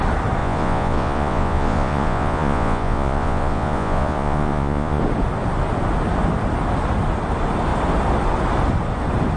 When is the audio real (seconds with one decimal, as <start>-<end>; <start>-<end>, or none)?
0.0-0.4; 5.0-9.4